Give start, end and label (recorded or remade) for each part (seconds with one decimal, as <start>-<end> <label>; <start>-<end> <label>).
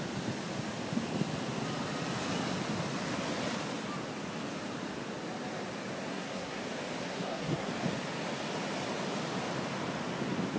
0.0-6.1 recorded; 6.1-6.6 remade; 6.6-7.1 recorded; 7.1-7.7 remade; 7.7-10.6 recorded